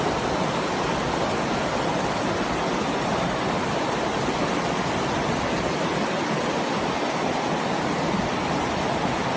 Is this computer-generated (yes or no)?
no